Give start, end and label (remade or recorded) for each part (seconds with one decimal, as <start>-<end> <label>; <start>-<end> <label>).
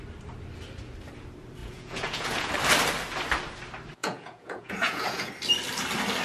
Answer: 0.0-1.6 recorded; 1.6-2.5 remade; 2.5-4.0 recorded; 4.0-5.3 remade; 5.3-6.2 recorded